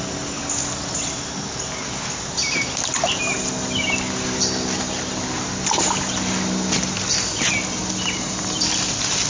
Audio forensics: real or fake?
real